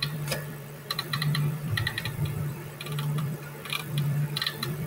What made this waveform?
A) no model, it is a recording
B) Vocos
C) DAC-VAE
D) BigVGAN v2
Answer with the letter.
D